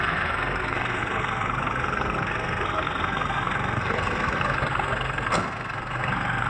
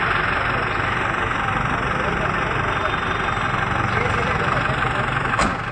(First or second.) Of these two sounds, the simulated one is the first